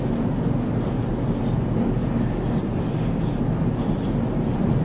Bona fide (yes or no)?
yes